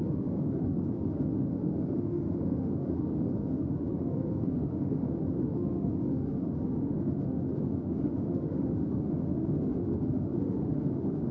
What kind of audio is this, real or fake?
fake